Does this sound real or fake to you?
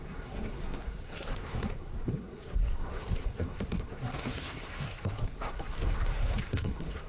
fake